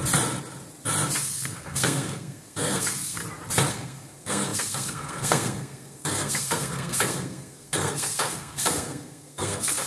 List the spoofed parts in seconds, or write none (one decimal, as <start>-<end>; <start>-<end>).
1.2-3.2; 3.7-9.9